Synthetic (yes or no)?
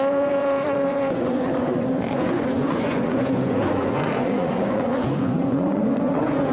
yes